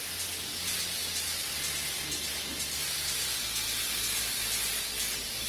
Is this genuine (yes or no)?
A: yes